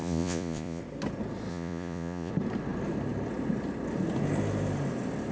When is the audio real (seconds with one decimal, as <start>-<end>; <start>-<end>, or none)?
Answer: 0.8-1.5; 2.3-5.3

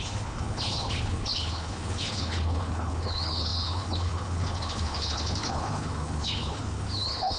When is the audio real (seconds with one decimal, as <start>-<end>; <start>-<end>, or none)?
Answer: none

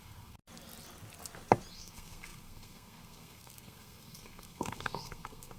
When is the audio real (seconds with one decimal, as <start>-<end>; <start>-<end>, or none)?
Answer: 0.4-1.7

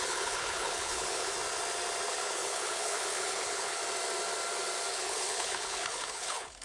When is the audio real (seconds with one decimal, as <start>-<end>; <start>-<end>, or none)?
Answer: 1.3-2.1; 3.8-4.9

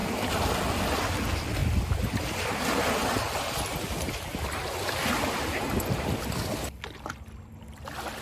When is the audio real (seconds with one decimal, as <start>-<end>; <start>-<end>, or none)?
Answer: 0.0-8.2

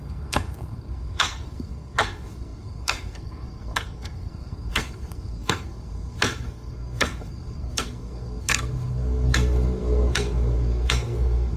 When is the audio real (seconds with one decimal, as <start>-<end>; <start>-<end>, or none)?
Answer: none

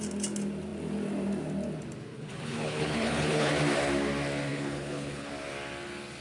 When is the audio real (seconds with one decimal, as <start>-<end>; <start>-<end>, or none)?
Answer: 0.0-2.1; 3.5-4.5; 5.3-6.2

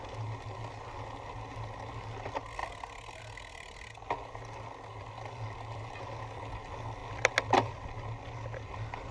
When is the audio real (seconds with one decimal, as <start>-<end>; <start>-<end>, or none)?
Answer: 0.0-9.1